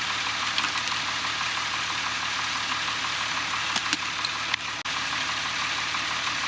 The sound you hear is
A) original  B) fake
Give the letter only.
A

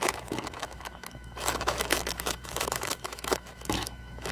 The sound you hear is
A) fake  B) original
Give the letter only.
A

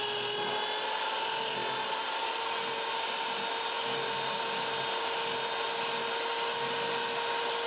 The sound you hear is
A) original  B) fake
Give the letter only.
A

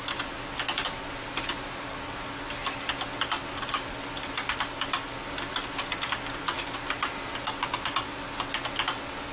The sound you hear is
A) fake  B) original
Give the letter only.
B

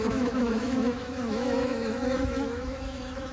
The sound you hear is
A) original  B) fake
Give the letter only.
B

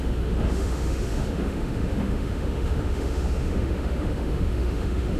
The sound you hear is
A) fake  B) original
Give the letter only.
A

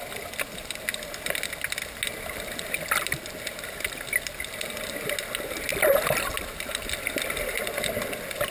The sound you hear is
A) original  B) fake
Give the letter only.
A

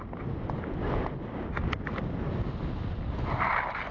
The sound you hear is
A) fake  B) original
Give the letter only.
B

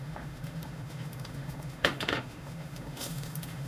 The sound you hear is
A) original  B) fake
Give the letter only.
B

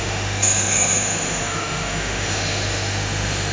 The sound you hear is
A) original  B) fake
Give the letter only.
B